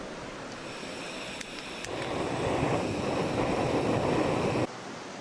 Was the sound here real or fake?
real